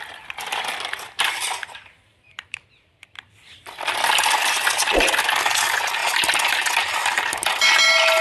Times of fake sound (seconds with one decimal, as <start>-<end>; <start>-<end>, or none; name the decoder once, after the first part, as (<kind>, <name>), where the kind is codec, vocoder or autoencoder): 0.0-6.0 (vocoder, BigVGAN v2); 6.5-8.2